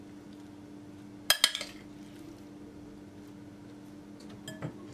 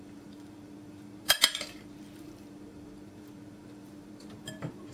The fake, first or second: second